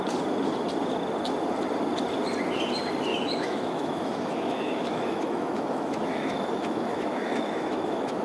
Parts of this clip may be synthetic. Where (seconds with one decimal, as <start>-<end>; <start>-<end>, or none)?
3.1-8.2